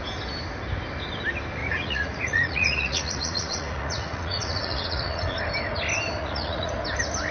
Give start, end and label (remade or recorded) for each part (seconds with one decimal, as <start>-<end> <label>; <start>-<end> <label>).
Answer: 0.0-1.6 recorded; 1.6-5.4 remade; 5.4-6.2 recorded; 6.2-6.7 remade; 6.7-7.3 recorded